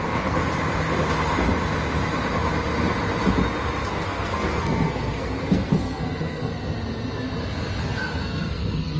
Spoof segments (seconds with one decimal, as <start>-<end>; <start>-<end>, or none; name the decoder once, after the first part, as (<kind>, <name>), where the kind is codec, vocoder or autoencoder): 0.0-0.4 (codec, SNAC); 3.9-6.5; 7.8-9.0